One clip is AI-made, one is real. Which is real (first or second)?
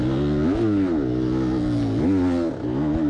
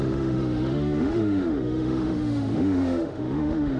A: first